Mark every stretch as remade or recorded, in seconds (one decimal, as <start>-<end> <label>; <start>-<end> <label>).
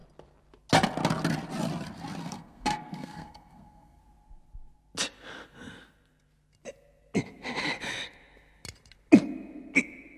0.0-2.2 recorded; 2.2-4.0 remade; 4.0-10.2 recorded